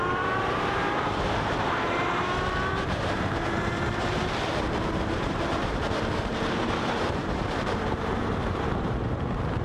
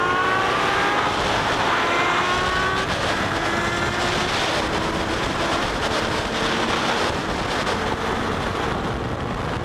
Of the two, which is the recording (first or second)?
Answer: second